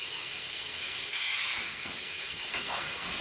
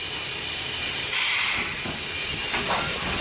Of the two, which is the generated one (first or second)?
first